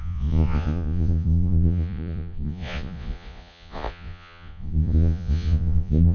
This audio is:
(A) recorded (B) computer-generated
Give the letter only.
B